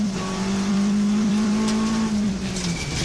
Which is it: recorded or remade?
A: remade